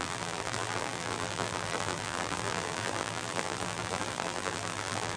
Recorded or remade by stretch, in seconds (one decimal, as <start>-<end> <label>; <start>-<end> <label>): 0.0-5.2 remade